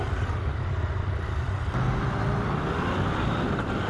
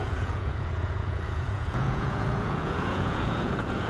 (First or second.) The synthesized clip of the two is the second